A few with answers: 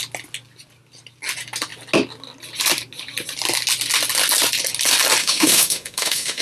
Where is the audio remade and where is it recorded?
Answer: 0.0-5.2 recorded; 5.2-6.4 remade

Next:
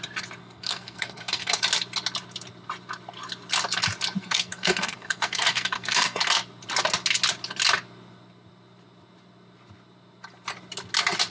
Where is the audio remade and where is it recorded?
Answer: 0.0-0.4 recorded; 0.4-1.6 remade; 1.6-4.2 recorded; 4.2-6.2 remade; 6.2-11.3 recorded

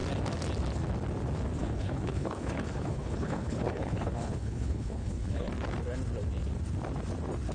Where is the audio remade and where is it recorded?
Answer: 0.0-1.6 recorded; 1.6-5.5 remade; 5.5-7.5 recorded